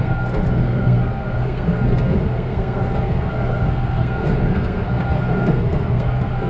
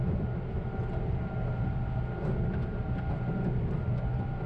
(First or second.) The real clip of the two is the second